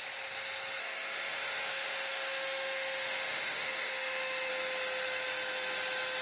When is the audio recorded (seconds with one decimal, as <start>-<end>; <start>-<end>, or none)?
0.0-0.8; 4.5-6.2

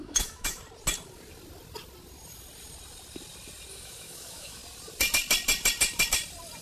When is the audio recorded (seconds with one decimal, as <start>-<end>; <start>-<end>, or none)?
0.6-3.7; 4.6-6.6

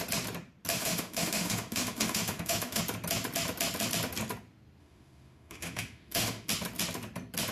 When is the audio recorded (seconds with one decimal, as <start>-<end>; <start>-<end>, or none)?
0.0-0.7; 2.8-4.8; 6.5-7.5

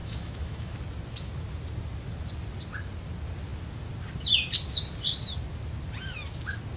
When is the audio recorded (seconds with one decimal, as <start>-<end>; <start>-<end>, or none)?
0.8-6.8

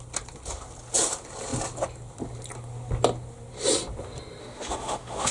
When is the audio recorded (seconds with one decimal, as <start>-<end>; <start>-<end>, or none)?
0.0-4.4